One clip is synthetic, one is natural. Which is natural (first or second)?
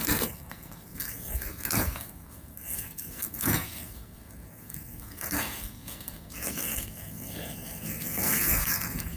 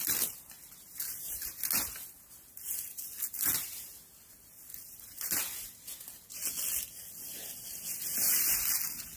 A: second